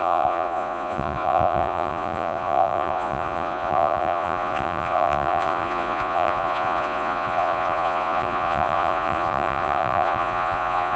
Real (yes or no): no